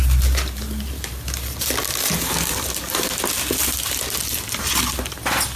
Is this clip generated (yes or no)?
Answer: no